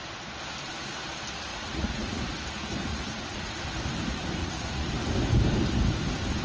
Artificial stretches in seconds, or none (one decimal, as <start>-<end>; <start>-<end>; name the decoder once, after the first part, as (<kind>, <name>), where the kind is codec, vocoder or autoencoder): 1.5-2.2 (vocoder, Vocos); 2.9-3.5; 4.4-4.9